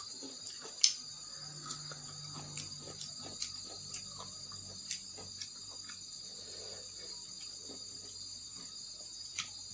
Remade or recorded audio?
recorded